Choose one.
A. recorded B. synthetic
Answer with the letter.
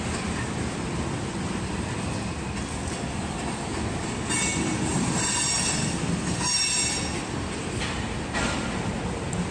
A